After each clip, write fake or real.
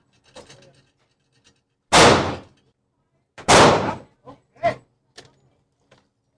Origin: real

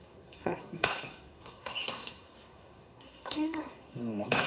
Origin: fake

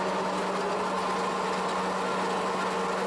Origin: real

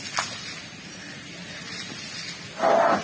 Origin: real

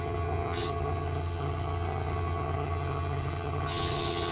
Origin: fake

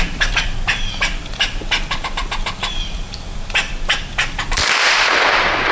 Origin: fake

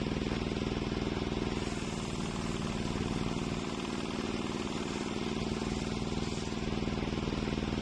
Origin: real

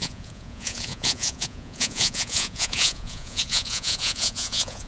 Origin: fake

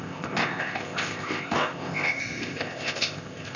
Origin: fake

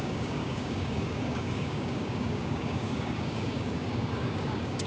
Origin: fake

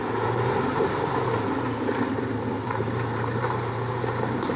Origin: real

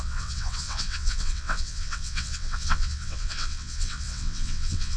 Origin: fake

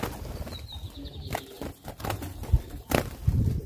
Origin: real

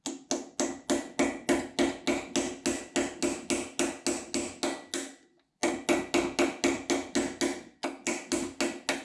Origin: real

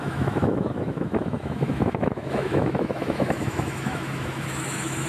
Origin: fake